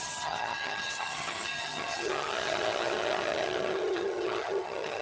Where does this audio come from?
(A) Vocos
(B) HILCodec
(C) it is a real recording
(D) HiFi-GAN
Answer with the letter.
D